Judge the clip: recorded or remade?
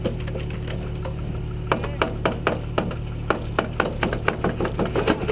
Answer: recorded